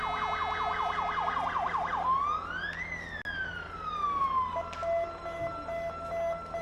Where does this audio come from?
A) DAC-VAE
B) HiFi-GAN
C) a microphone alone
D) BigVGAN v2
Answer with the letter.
C